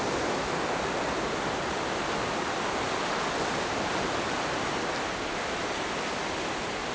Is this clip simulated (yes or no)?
no